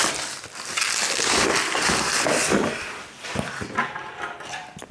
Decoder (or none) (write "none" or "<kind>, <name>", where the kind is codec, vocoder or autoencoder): none